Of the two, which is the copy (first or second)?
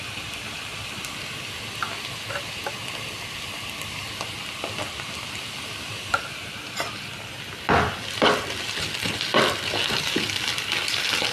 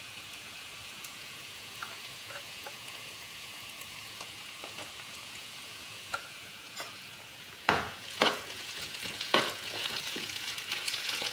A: second